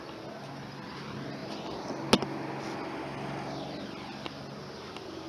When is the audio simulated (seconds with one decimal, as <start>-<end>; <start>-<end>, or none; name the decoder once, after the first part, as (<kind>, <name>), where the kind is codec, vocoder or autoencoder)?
none